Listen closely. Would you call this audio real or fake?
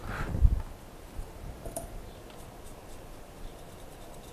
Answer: fake